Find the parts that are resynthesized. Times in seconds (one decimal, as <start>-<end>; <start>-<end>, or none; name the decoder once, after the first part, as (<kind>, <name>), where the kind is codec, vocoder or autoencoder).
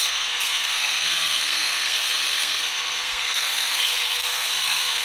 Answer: 0.0-5.0 (codec, SNAC)